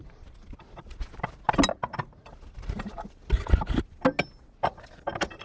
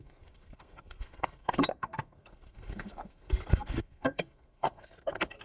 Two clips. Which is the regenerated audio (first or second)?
second